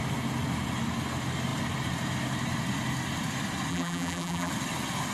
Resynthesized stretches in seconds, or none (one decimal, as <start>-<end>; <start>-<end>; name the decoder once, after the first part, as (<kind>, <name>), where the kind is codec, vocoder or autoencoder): 3.7-4.5 (vocoder, BigVGAN v2)